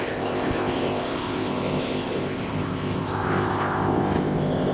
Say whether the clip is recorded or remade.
remade